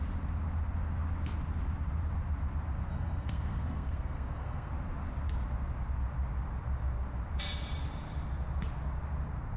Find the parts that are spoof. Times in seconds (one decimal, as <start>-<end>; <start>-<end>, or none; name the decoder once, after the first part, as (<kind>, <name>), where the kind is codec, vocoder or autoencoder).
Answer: 2.9-4.7 (codec, SNAC)

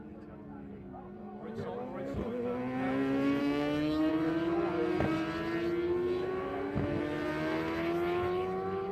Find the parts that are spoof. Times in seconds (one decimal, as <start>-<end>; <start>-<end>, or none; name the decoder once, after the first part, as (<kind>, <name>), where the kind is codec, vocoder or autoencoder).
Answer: 3.4-4.1 (codec, SNAC)

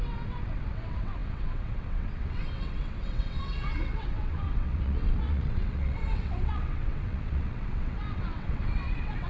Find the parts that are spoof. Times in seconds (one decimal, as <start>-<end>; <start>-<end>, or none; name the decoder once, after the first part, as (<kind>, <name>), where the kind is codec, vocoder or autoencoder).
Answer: 0.0-9.3 (vocoder, WaveNeXt)